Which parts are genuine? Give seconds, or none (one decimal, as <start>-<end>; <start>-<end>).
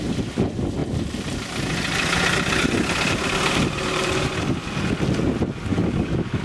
0.0-5.7